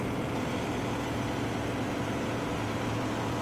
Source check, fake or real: fake